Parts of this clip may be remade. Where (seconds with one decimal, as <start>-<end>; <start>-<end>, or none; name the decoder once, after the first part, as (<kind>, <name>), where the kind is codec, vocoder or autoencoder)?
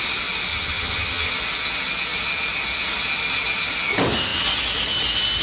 0.5-1.3 (vocoder, HiFi-GAN)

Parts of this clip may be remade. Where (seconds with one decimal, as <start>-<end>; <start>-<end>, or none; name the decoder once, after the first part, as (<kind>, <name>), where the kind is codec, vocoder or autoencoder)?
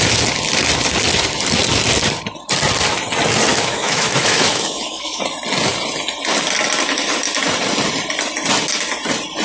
3.5-5.2 (autoencoder, DAC-VAE)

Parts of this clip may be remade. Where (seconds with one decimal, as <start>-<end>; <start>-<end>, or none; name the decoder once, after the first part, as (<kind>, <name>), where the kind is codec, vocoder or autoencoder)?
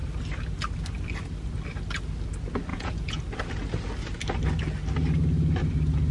2.7-3.2 (vocoder, Vocos)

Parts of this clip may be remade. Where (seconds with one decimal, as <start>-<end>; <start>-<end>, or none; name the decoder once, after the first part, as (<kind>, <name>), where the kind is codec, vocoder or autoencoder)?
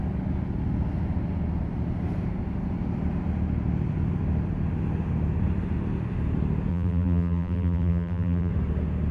6.7-8.5 (vocoder, BigVGAN v2)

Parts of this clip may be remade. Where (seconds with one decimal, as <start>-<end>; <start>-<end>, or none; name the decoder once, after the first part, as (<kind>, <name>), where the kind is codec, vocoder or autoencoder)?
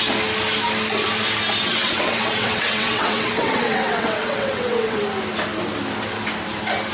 1.7-5.0 (vocoder, WaveNeXt)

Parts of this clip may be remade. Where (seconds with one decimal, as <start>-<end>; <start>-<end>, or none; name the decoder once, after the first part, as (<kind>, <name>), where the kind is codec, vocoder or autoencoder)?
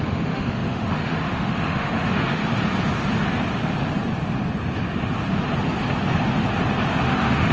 0.0-2.4 (autoencoder, DAC-VAE); 6.9-7.5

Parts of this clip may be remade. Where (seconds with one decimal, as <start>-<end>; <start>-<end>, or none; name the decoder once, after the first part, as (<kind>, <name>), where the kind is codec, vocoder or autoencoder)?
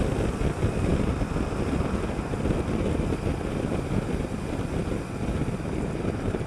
none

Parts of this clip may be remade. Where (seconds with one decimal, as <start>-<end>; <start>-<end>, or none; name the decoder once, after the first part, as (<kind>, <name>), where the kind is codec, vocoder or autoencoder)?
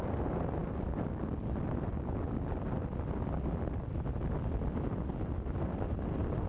none